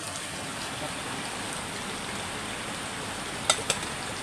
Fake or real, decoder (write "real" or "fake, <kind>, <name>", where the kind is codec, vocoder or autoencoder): real